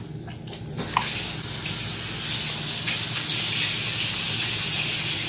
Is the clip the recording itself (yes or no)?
yes